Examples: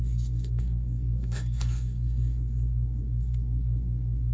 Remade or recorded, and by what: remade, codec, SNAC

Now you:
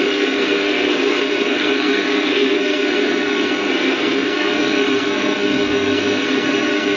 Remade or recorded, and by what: remade, codec, SNAC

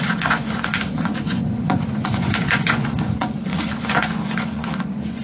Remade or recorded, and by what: remade, vocoder, Vocos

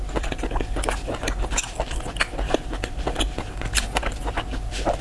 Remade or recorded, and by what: recorded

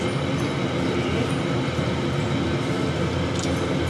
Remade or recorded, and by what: recorded